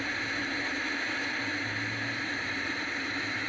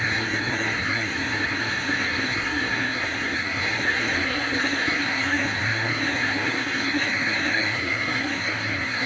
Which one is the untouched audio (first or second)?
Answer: first